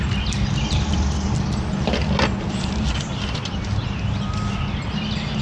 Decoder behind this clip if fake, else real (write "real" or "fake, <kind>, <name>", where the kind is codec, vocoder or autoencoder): real